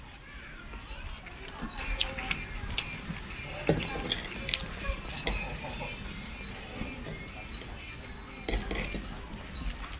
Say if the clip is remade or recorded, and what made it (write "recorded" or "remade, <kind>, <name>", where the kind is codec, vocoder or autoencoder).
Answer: recorded